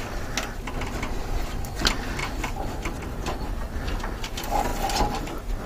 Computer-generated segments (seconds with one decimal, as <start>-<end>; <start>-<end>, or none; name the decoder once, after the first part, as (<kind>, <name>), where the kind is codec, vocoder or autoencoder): none